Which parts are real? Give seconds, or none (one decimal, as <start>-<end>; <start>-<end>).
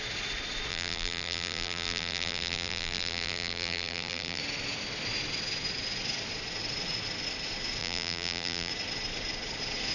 0.0-0.7; 4.4-7.8; 8.7-9.9